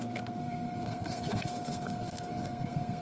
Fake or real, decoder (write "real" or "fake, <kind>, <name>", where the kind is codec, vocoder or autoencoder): fake, codec, SNAC